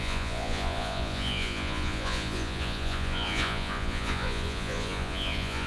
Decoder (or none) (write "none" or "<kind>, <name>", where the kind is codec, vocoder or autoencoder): vocoder, Vocos